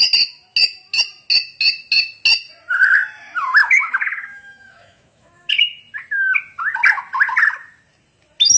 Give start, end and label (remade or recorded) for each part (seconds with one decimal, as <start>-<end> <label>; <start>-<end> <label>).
0.0-3.6 recorded; 3.6-5.8 remade; 5.8-8.6 recorded